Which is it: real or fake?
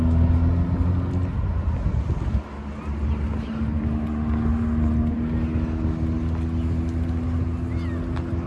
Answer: real